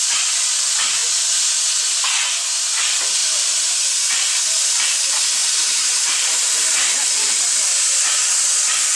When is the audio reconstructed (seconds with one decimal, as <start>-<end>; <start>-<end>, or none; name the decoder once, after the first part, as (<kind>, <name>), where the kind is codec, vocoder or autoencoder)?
0.0-1.0 (vocoder, BigVGAN v2); 2.5-9.0